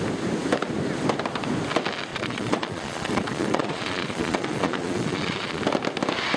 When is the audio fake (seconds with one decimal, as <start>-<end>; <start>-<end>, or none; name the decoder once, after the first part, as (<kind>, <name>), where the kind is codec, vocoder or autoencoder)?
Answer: 2.1-5.6 (vocoder, Vocos)